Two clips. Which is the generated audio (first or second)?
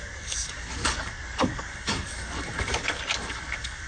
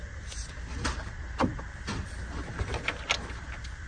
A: first